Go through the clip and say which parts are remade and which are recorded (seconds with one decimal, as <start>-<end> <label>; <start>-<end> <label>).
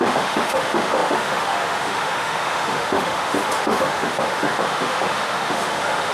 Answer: 0.0-6.1 remade